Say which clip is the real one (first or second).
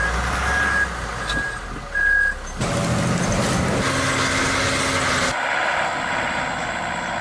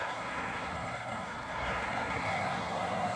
first